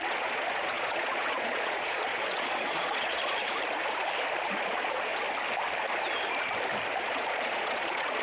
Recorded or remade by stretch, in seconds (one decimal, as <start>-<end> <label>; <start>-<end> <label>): 0.0-3.4 remade; 3.4-4.4 recorded; 4.4-5.1 remade; 5.1-7.0 recorded; 7.0-8.2 remade